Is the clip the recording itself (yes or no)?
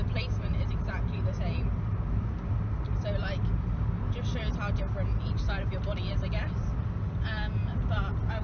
yes